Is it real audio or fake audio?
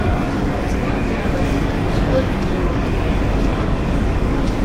fake